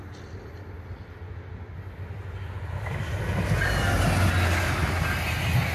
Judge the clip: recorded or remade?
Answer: recorded